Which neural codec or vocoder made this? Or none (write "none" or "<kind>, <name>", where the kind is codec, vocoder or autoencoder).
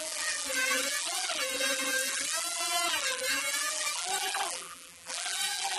vocoder, BigVGAN v2